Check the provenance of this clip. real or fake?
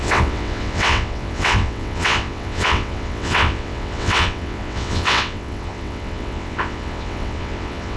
fake